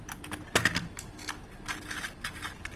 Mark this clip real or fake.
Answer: real